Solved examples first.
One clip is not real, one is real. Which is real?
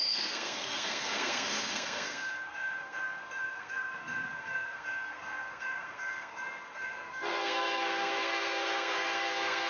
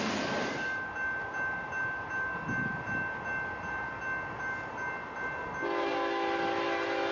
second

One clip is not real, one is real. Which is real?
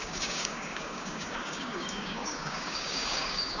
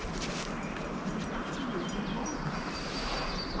second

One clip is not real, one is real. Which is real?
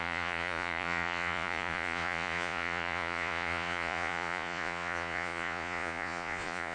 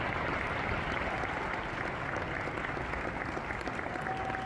second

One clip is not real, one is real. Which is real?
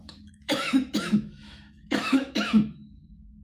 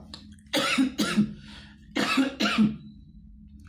second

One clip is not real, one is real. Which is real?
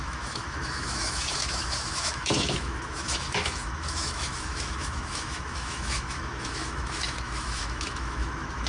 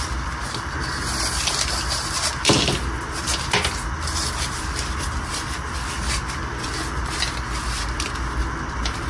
second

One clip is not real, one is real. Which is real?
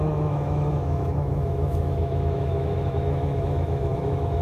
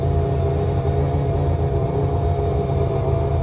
second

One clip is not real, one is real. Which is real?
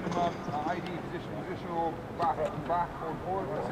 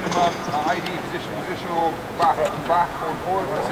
first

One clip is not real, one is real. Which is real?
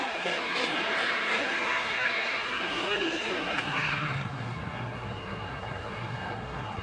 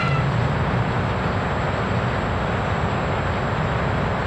second